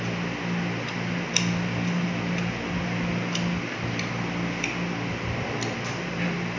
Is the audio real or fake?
real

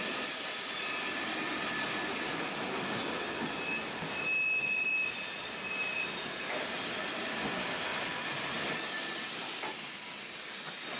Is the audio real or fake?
real